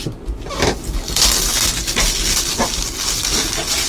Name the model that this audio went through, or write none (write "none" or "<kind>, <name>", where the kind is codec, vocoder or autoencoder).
none